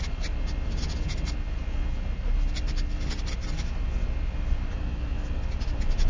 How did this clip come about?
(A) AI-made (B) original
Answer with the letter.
B